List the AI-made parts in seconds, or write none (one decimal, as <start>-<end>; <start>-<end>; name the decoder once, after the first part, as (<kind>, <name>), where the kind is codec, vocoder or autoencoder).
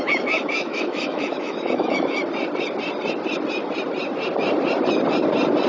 0.0-2.2 (autoencoder, DAC-VAE)